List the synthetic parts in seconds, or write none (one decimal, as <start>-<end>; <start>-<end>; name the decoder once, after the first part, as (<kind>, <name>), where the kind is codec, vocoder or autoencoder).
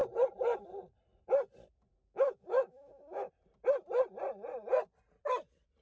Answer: 1.9-3.3 (autoencoder, DAC-VAE)